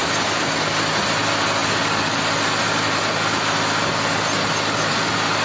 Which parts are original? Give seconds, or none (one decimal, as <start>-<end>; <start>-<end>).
0.0-5.4